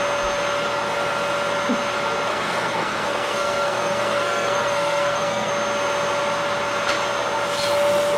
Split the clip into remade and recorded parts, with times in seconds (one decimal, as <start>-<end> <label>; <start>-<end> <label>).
0.0-2.3 recorded; 2.3-5.5 remade; 5.5-8.2 recorded